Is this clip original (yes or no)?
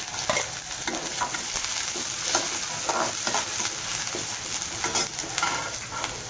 yes